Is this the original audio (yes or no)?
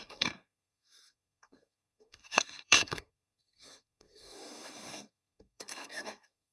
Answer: no